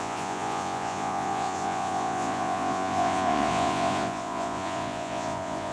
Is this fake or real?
fake